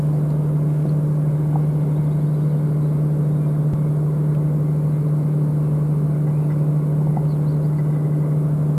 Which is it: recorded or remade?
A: recorded